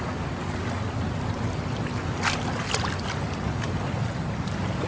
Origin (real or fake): real